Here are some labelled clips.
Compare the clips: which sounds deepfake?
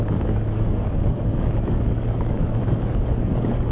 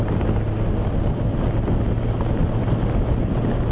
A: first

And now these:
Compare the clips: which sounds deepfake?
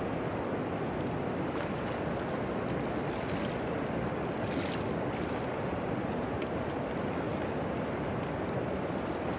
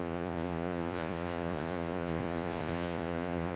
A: second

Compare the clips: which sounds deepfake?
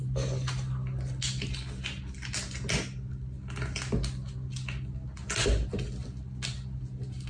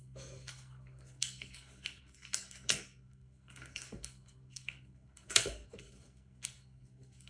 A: second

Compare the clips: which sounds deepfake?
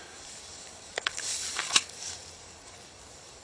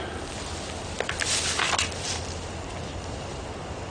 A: first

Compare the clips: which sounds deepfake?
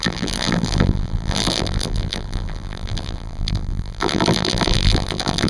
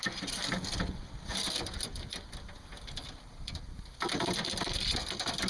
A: first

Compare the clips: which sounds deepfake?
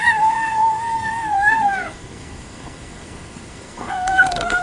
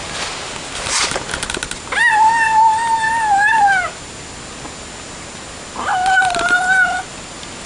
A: first